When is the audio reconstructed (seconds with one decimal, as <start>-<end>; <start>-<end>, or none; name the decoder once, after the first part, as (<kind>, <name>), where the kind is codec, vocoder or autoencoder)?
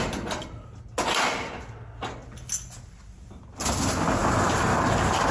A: none